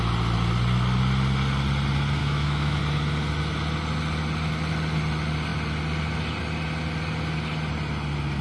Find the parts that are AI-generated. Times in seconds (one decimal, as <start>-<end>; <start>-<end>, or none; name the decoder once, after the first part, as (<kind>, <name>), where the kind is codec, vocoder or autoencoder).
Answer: 2.2-2.8 (autoencoder, DAC-VAE)